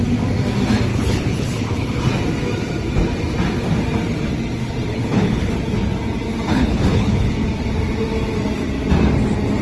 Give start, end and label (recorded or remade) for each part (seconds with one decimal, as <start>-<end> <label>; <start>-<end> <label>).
0.0-0.9 recorded; 0.9-2.0 remade; 2.0-4.9 recorded; 4.9-5.5 remade; 5.5-6.5 recorded; 6.5-7.3 remade; 7.3-9.6 recorded

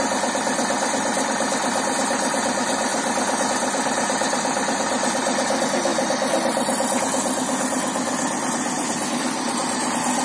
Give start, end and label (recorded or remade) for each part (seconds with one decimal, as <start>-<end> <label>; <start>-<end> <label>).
0.0-10.2 recorded